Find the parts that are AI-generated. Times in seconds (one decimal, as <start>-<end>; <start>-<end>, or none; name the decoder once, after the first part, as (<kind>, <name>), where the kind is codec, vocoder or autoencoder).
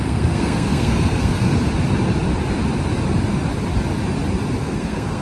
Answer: 0.0-1.5 (codec, SNAC); 4.6-5.2